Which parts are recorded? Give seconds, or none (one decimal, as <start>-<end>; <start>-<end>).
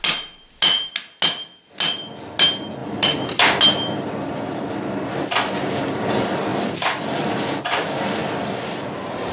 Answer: 0.0-2.8; 3.6-6.5; 7.6-8.2